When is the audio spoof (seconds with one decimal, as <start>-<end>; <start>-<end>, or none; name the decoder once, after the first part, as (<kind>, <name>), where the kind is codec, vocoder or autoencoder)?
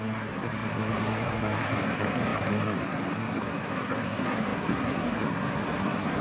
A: 0.0-6.2 (codec, SNAC)